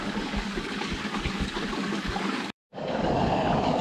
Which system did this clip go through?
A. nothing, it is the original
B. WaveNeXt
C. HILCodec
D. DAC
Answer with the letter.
D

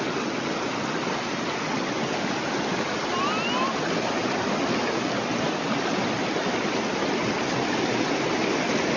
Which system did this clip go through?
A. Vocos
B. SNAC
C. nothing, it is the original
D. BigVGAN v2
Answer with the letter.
C